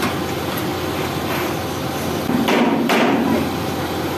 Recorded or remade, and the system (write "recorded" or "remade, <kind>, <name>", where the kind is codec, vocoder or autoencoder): recorded